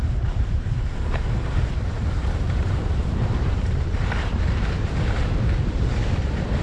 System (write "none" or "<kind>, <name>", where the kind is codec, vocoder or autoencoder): vocoder, BigVGAN v2